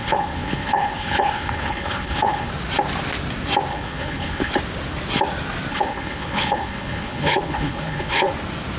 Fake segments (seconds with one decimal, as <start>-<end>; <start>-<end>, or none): 0.0-2.5; 3.7-4.5; 5.7-8.3